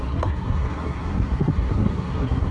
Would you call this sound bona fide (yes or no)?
no